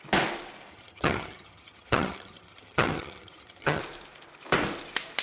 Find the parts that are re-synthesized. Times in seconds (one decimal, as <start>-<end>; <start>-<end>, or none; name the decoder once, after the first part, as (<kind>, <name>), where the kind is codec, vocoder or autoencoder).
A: 0.7-3.8 (vocoder, HiFi-GAN)